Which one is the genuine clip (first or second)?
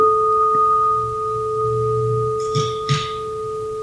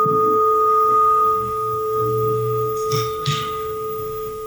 first